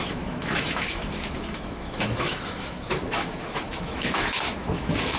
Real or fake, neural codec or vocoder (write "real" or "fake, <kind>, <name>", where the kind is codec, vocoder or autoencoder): fake, autoencoder, DAC-VAE